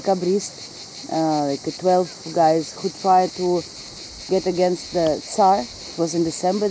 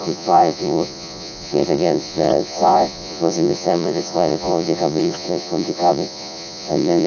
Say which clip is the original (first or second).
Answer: first